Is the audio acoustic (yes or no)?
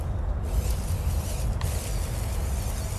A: yes